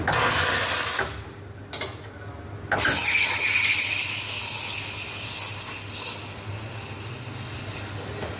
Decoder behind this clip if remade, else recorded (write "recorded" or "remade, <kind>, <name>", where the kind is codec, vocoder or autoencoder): recorded